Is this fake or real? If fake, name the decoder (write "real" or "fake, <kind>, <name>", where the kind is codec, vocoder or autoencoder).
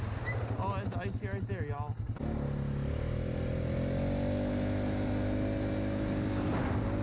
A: real